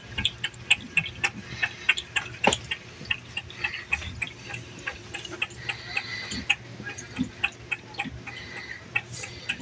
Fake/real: real